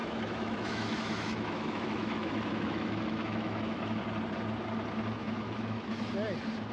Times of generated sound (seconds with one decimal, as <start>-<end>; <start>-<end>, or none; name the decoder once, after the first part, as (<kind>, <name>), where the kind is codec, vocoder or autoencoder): 0.0-4.0 (autoencoder, DAC-VAE); 5.2-6.1

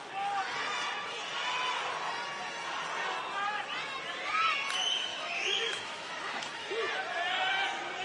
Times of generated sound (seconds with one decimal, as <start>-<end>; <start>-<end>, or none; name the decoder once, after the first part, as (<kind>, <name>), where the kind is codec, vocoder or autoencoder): 5.1-6.7 (autoencoder, DAC-VAE)

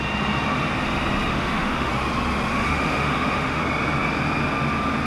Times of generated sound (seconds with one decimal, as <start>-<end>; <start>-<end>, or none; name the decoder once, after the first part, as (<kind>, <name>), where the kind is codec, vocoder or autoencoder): 1.3-1.9 (autoencoder, DAC-VAE); 2.5-3.6

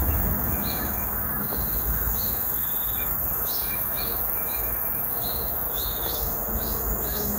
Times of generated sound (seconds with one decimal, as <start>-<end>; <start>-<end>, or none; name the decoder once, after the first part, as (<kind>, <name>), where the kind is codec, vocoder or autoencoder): 0.0-7.4 (autoencoder, DAC-VAE)

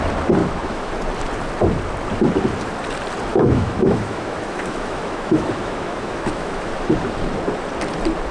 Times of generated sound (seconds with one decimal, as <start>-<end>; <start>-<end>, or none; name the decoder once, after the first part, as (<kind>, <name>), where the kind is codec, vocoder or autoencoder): 0.4-0.9 (autoencoder, DAC-VAE); 3.3-6.7

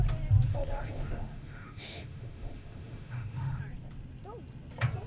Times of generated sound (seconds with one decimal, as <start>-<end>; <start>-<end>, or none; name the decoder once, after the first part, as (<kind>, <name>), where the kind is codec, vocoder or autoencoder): 0.5-3.6 (autoencoder, DAC-VAE)

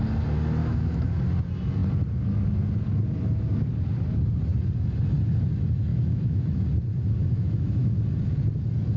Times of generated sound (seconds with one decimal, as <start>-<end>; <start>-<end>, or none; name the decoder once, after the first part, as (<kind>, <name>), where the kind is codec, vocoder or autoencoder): 0.6-1.2 (autoencoder, DAC-VAE); 5.9-6.6; 7.2-8.0